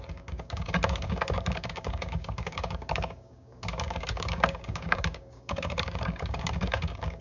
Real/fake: fake